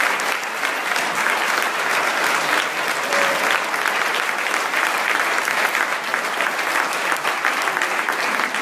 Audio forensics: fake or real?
real